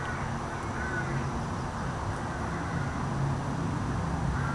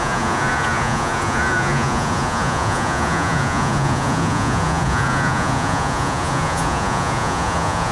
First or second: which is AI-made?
second